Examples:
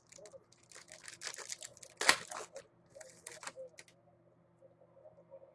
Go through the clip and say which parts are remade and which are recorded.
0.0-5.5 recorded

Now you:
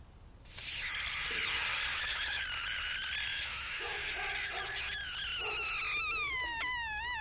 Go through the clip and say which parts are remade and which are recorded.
0.0-1.9 recorded; 1.9-2.4 remade; 2.4-3.3 recorded; 3.3-4.1 remade; 4.1-7.2 recorded